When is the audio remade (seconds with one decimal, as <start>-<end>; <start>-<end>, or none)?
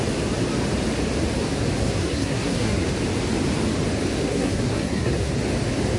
1.8-2.9; 4.2-5.3